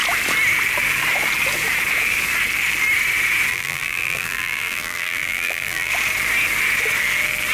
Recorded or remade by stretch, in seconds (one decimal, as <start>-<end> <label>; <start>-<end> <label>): 0.0-3.5 recorded; 3.5-5.9 remade; 5.9-7.5 recorded